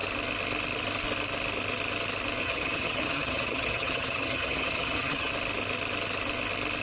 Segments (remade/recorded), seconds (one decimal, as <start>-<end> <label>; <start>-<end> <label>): 0.0-2.4 recorded; 2.4-5.3 remade; 5.3-6.8 recorded